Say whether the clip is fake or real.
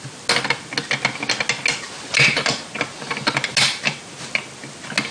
real